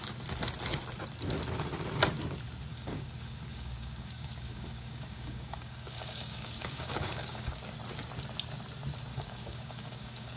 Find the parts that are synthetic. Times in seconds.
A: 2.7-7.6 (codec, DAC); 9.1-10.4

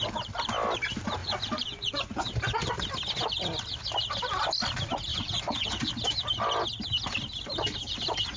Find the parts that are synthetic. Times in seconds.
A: 1.2-2.3 (vocoder, Vocos); 5.1-5.9